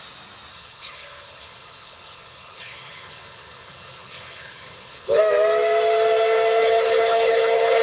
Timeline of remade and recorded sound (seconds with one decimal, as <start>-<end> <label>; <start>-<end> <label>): 0.0-0.5 recorded; 0.5-5.2 remade; 5.2-6.6 recorded; 6.6-7.8 remade